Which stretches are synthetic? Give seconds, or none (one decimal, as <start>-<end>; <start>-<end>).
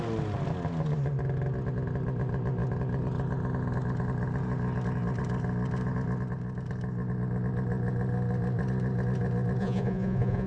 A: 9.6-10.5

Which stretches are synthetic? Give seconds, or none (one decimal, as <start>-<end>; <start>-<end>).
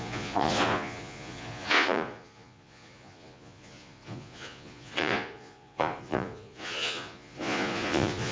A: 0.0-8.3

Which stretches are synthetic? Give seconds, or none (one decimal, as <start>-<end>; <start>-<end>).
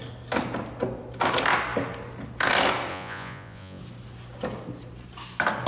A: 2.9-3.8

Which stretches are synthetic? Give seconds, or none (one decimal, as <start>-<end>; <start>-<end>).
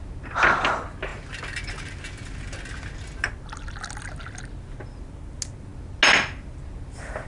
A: none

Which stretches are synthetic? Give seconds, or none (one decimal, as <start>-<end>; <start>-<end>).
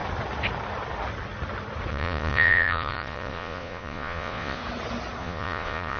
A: 1.9-4.6; 5.2-6.0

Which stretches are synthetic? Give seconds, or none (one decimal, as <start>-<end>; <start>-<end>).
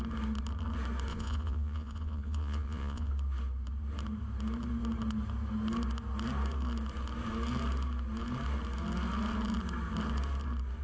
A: 1.1-3.1